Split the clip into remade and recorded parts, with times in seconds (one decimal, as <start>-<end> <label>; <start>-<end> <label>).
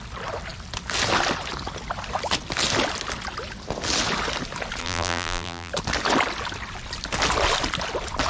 0.0-4.8 recorded; 4.8-5.7 remade; 5.7-8.3 recorded